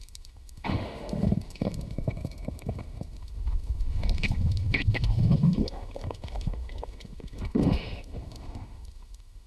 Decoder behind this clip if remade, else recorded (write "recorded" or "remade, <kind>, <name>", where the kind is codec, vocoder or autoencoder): remade, autoencoder, DAC-VAE